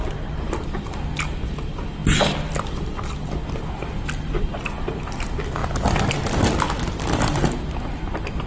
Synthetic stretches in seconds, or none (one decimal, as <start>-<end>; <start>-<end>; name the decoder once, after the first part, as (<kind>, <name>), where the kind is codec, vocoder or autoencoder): none